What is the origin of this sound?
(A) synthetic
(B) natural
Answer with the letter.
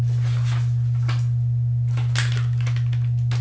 B